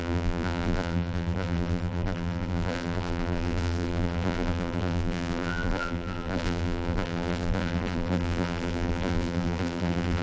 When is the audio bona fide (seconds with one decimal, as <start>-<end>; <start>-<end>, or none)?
none

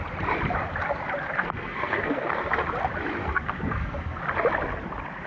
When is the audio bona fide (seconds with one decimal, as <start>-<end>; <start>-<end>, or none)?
0.0-1.4; 2.5-3.2; 4.2-5.3

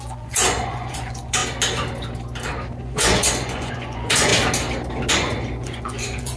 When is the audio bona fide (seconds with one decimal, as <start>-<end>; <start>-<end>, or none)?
1.4-2.8; 4.3-5.1

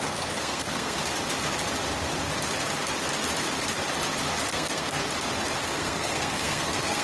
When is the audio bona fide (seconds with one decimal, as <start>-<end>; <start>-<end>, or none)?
1.0-4.5; 5.0-5.6

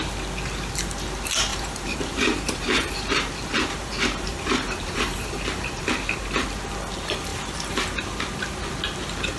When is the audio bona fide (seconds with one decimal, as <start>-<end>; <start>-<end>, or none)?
0.0-1.5; 5.8-7.3; 8.6-9.4